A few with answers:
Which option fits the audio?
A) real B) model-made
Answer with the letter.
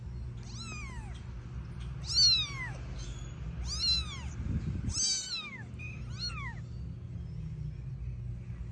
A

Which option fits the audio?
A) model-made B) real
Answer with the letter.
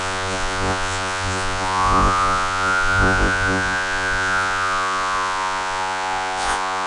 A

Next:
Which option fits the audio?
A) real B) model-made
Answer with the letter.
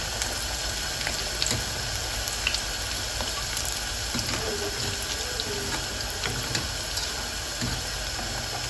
A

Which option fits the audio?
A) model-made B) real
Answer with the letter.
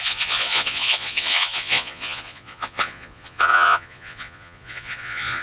A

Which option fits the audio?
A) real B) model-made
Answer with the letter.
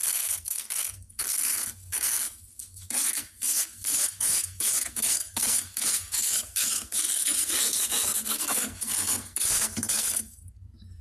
B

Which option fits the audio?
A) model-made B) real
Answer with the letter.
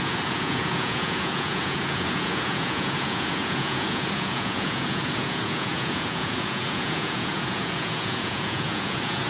A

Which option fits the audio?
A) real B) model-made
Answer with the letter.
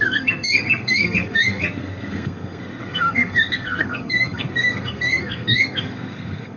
B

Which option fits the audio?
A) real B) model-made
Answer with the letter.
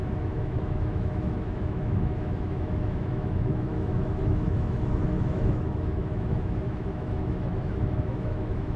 B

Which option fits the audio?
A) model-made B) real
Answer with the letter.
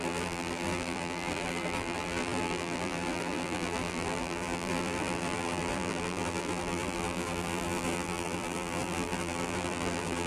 A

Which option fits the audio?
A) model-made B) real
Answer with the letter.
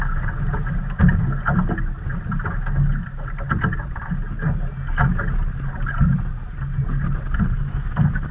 B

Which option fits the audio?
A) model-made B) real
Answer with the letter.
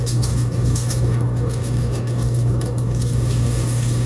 A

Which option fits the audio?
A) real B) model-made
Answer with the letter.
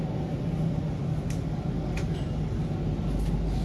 A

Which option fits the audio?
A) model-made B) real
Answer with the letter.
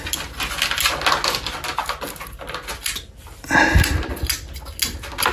B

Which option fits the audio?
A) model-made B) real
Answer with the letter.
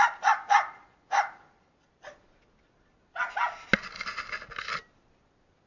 B